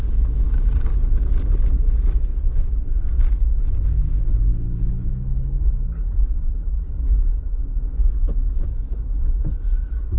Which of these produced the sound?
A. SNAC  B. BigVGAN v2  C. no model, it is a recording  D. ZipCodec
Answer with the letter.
C